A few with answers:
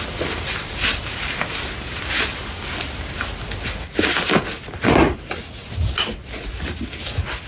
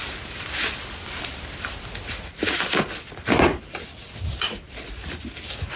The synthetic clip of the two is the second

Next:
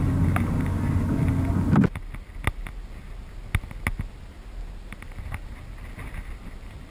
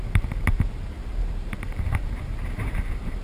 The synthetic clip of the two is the second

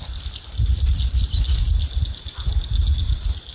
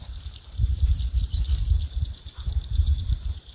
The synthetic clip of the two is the second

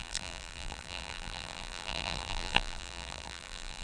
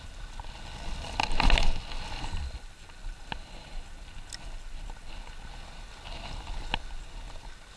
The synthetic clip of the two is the first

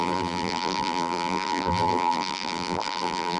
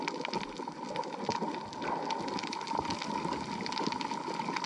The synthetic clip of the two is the first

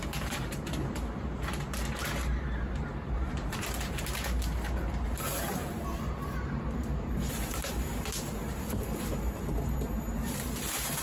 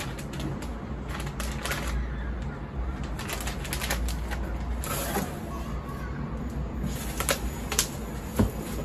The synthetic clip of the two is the first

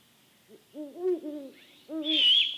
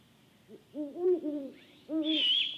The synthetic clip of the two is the second